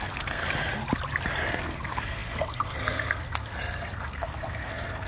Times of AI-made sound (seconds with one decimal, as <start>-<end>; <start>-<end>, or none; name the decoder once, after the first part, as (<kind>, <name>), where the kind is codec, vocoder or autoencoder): 0.0-0.4 (codec, SNAC); 1.5-5.1